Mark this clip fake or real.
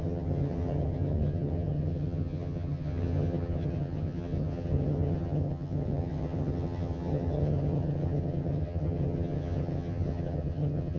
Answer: fake